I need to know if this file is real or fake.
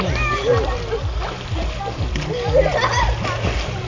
real